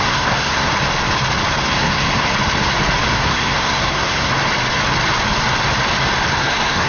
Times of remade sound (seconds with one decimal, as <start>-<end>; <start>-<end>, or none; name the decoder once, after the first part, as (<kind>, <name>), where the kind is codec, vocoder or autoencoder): 0.0-0.7 (codec, SNAC); 1.6-2.3; 3.1-4.3; 6.3-6.9